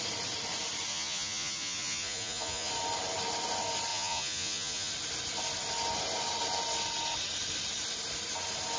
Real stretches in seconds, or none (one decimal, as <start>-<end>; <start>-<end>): 0.0-0.9; 2.7-3.9; 4.9-8.8

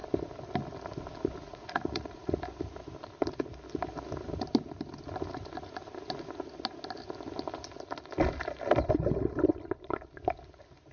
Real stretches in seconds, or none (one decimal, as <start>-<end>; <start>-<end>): 0.0-1.4; 2.4-10.9

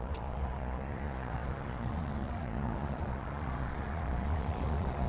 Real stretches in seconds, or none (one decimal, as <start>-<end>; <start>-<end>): none

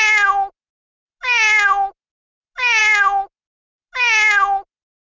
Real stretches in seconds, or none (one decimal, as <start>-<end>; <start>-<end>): 0.0-5.1